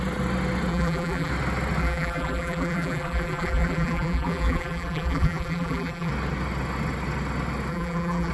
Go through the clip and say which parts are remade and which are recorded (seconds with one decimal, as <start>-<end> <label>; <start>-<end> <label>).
0.0-0.7 recorded; 0.7-1.3 remade; 1.3-1.8 recorded; 1.8-6.1 remade; 6.1-7.7 recorded; 7.7-8.3 remade